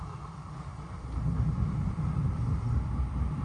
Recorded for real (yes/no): no